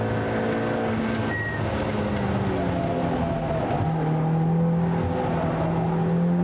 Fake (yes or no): no